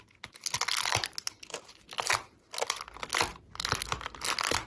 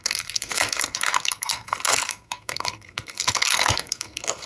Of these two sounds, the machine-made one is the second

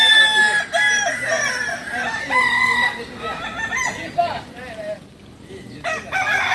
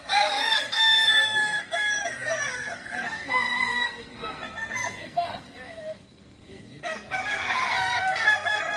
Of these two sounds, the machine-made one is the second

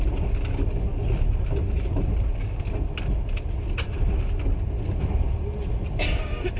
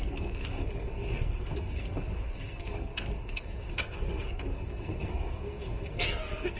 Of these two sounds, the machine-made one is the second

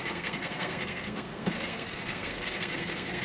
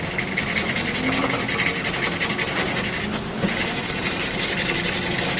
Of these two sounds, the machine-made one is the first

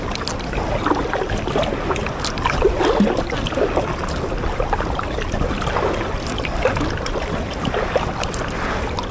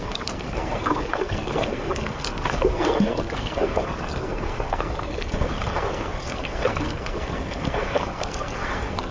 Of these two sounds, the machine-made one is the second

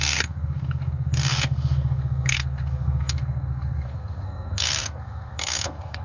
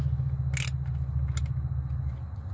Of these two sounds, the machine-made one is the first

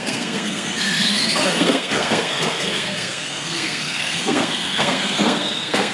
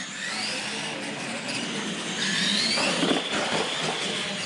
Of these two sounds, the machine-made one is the first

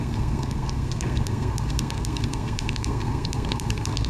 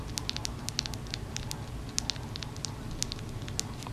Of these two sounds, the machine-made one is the first